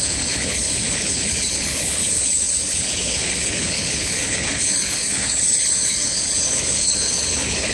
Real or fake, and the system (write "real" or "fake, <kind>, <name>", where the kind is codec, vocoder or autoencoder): fake, codec, HILCodec